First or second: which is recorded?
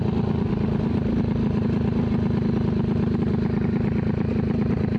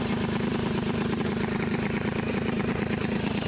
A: first